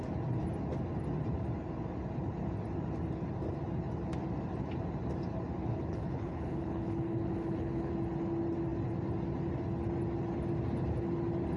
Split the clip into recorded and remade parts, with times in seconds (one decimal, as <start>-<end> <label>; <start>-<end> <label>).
0.0-5.6 recorded; 5.6-7.9 remade; 7.9-11.6 recorded